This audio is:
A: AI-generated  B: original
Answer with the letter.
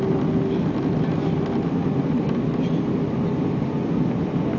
B